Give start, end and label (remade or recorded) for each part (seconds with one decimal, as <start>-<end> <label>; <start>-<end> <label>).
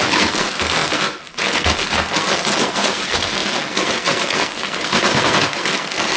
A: 0.0-6.2 remade